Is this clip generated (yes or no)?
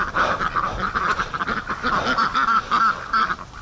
no